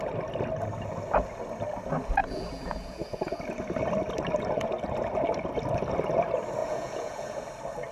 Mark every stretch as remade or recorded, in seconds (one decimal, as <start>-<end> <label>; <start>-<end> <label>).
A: 0.0-2.2 recorded; 2.2-3.4 remade; 3.4-6.6 recorded; 6.6-7.5 remade; 7.5-7.9 recorded